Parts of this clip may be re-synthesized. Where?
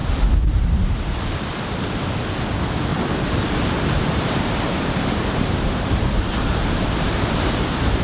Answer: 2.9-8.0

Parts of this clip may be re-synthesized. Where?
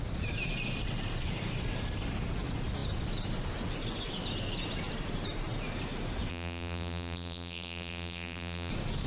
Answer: 6.3-8.7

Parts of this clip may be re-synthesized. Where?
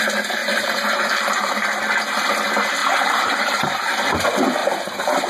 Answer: 0.4-1.5; 2.8-3.9; 4.6-5.3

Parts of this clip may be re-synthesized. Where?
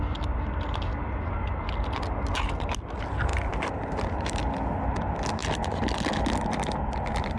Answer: 3.3-3.9; 5.4-6.1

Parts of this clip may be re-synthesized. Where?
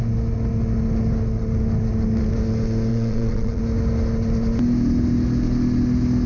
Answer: 2.9-3.6